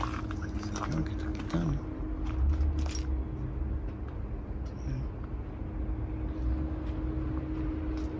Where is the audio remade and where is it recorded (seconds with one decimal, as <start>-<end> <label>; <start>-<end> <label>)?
0.0-8.2 recorded